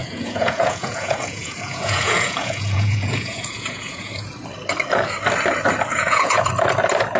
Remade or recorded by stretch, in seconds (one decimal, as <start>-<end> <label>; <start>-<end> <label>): 0.0-4.3 remade; 4.3-5.9 recorded; 5.9-6.5 remade; 6.5-7.2 recorded